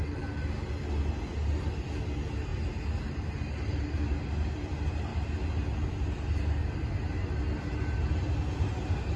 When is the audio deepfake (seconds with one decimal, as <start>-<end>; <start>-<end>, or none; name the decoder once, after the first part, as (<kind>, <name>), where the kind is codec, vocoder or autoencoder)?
none